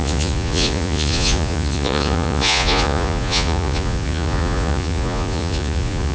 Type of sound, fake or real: fake